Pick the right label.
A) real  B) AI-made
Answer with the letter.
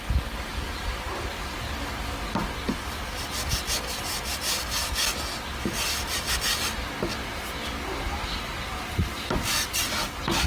A